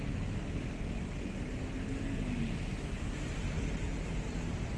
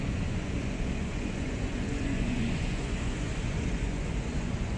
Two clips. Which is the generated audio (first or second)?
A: second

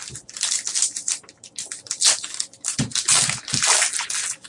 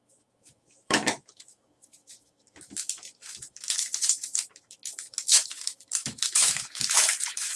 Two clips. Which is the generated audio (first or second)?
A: second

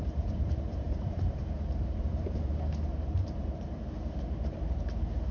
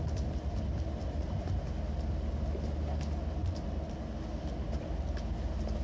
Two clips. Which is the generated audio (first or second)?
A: first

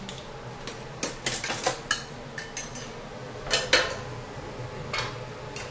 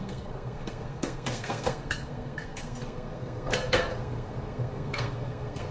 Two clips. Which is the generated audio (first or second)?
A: second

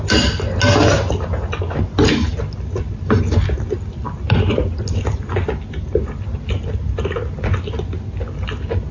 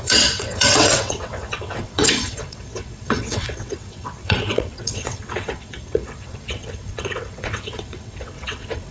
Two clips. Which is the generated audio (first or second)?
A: second